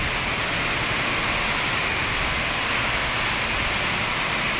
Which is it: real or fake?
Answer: real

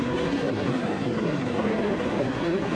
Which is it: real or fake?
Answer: fake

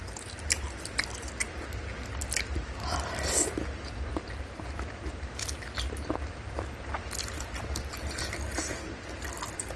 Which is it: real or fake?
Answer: real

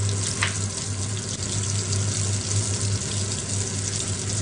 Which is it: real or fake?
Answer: real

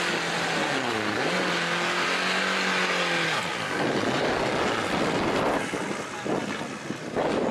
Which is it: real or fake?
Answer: real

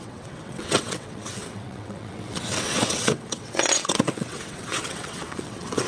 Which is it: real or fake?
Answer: fake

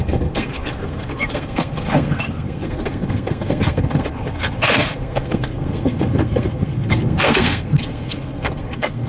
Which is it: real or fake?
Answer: fake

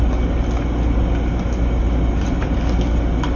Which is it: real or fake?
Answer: real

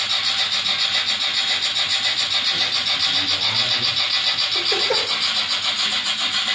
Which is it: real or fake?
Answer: real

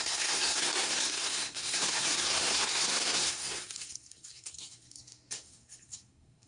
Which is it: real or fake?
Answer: fake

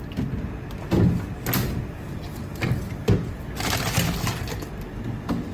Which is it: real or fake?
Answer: real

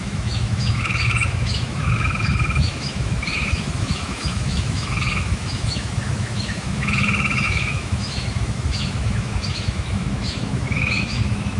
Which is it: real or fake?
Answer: fake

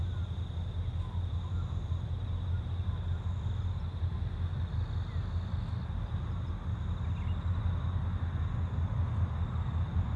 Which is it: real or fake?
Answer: real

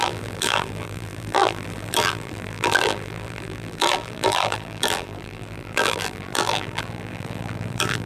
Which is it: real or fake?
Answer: fake